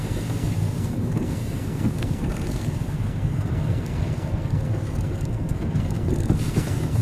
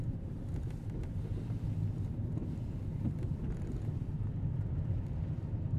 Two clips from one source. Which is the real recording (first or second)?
second